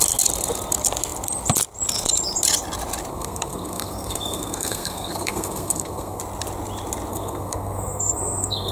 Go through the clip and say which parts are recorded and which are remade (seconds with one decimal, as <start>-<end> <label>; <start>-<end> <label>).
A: 0.0-3.1 recorded; 3.1-6.2 remade; 6.2-7.1 recorded; 7.1-8.7 remade